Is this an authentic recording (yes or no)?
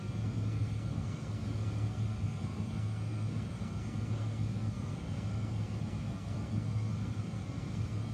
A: no